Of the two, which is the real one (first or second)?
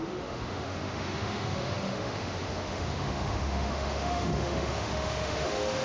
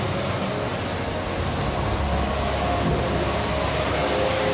second